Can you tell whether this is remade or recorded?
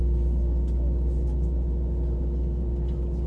recorded